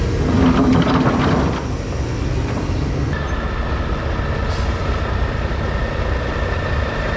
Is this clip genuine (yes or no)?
yes